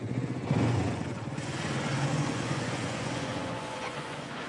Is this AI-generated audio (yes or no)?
yes